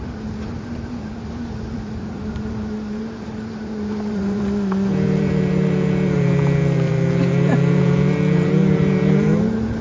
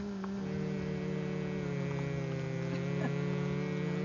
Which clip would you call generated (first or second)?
first